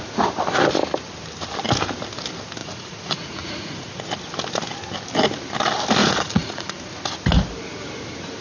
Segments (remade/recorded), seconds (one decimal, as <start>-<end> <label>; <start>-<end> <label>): 0.0-2.6 recorded; 2.6-4.0 remade; 4.0-6.0 recorded; 6.0-6.8 remade; 6.8-8.4 recorded